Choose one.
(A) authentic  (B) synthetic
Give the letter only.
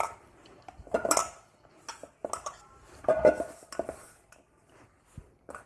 A